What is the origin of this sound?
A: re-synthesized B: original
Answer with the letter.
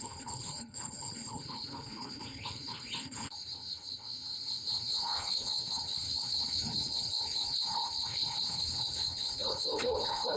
A